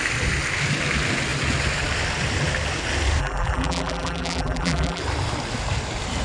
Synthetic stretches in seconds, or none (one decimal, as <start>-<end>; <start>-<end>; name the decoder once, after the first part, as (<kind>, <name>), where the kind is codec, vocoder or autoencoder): 3.2-5.0 (vocoder, BigVGAN v2)